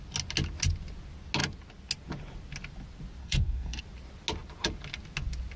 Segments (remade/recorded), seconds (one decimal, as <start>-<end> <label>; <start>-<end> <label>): 0.0-3.2 recorded; 3.2-3.8 remade; 3.8-5.6 recorded